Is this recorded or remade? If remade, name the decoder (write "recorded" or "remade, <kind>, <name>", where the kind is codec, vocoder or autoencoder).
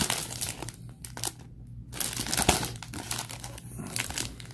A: recorded